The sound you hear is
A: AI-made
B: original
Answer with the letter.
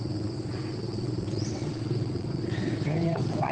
A